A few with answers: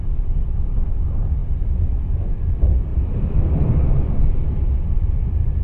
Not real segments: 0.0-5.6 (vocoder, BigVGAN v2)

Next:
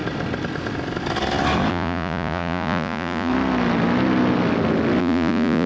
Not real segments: 1.7-3.3 (vocoder, Vocos); 5.0-5.7

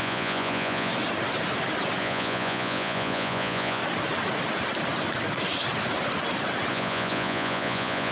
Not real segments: 0.0-0.9 (vocoder, Vocos); 2.0-3.8; 6.7-8.1